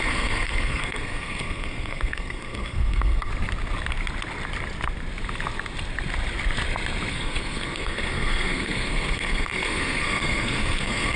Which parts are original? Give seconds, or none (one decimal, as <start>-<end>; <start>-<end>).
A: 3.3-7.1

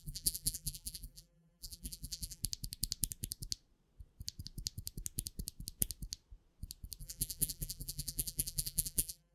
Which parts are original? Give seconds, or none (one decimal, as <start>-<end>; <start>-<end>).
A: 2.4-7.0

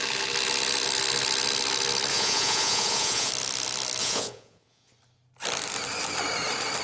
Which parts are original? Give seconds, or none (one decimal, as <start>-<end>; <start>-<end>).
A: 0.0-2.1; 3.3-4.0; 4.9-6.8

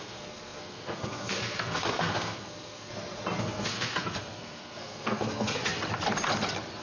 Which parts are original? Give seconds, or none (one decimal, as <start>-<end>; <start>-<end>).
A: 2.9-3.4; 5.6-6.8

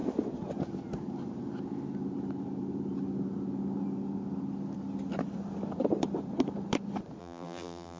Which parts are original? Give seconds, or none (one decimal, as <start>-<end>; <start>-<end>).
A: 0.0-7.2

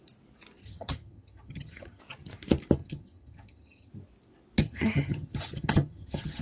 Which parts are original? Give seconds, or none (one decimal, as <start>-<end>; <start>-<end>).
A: 0.0-0.6; 2.0-2.8; 3.9-4.6